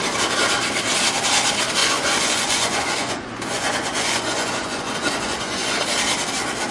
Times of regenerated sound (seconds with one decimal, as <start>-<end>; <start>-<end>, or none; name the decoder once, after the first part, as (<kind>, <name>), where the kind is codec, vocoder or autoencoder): 1.8-5.8 (vocoder, Vocos)